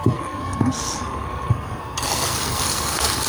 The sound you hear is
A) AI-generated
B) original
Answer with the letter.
A